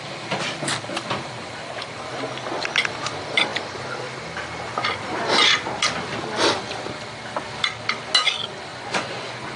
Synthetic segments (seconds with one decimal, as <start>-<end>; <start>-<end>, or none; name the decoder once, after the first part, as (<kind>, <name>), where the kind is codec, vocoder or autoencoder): 8.7-9.6 (vocoder, Vocos)